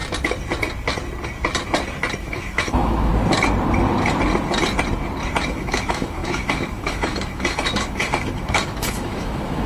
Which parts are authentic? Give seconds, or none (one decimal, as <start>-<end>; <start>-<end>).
0.0-2.2; 3.1-5.5